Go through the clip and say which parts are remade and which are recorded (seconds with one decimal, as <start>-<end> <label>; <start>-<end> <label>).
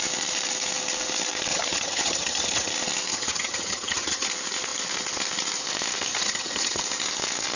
0.0-1.5 recorded; 1.5-2.7 remade; 2.7-3.1 recorded; 3.1-4.3 remade; 4.3-6.1 recorded; 6.1-6.8 remade; 6.8-7.6 recorded